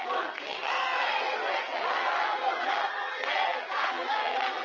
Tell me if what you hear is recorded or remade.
remade